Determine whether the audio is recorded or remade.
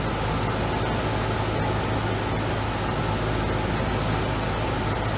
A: recorded